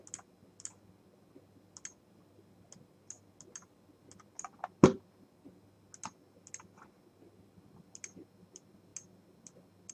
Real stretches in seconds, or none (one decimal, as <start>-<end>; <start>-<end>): 0.0-9.9